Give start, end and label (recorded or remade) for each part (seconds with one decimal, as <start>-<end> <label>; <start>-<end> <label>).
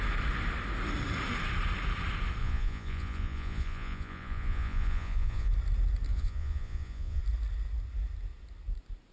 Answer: 0.0-2.4 recorded; 2.4-5.5 remade; 5.5-6.1 recorded; 6.1-7.2 remade; 7.2-9.1 recorded